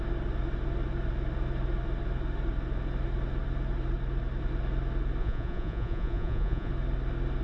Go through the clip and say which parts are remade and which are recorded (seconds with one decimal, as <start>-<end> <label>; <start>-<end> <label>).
0.0-5.2 recorded; 5.2-6.7 remade; 6.7-7.4 recorded